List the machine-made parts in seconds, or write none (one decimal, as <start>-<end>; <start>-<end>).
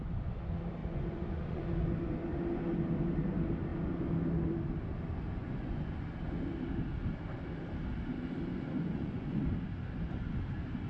0.8-1.9; 5.4-6.0; 8.5-9.4